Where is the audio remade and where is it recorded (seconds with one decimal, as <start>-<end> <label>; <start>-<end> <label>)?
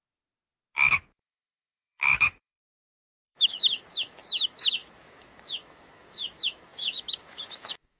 0.0-0.9 recorded; 0.9-8.0 remade